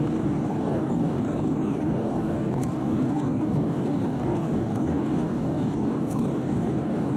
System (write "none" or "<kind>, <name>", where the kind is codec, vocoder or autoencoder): codec, DAC